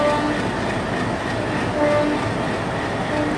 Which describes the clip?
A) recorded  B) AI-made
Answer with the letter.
A